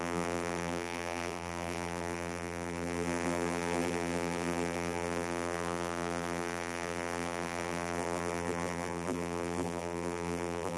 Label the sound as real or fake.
fake